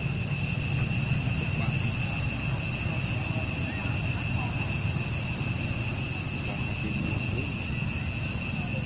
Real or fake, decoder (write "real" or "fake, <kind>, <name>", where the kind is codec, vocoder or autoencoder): real